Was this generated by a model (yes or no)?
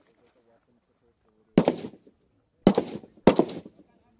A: no